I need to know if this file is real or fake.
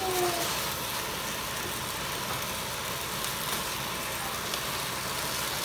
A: real